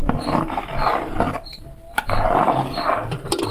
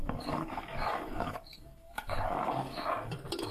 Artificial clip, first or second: second